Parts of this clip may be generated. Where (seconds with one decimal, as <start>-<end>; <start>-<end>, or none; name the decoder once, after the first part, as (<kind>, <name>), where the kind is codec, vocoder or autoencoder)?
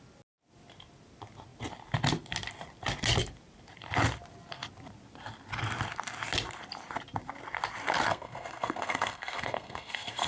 8.1-10.3 (codec, SNAC)